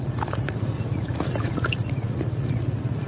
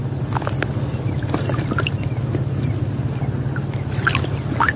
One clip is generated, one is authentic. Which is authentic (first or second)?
second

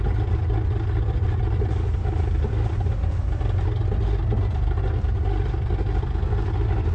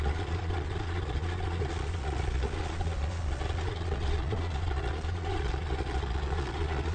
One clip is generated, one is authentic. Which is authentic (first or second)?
first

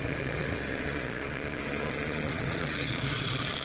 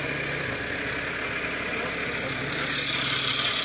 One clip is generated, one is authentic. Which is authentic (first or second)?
second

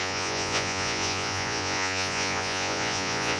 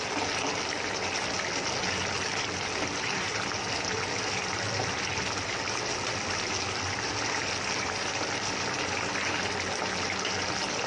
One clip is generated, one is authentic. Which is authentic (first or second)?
second